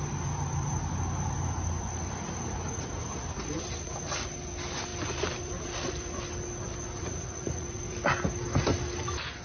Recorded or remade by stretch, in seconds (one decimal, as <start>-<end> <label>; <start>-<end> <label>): 0.0-7.0 recorded; 7.0-7.8 remade; 7.8-9.4 recorded